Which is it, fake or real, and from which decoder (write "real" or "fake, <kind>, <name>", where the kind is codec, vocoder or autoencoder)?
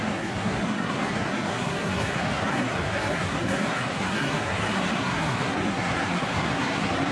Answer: fake, codec, SNAC